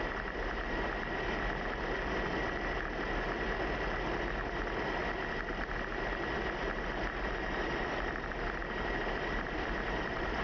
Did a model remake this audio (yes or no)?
no